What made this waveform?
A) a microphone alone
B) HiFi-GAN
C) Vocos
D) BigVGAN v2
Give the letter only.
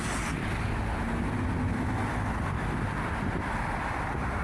A